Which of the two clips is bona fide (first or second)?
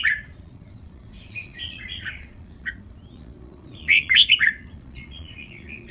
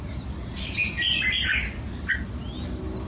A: second